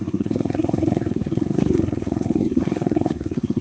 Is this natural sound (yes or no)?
no